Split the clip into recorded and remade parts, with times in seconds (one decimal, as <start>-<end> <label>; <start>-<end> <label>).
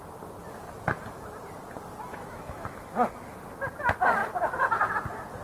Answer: 0.0-2.1 recorded; 2.1-3.1 remade; 3.1-5.4 recorded